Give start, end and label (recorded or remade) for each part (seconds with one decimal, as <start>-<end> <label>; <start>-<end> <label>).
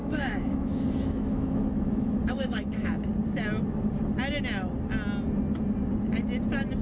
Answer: 0.0-2.9 remade; 2.9-6.8 recorded